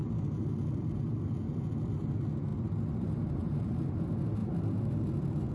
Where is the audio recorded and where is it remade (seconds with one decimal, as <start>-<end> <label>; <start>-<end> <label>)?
0.0-1.0 remade; 1.0-2.5 recorded; 2.5-3.8 remade; 3.8-4.4 recorded; 4.4-5.5 remade